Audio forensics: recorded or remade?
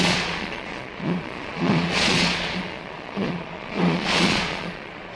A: remade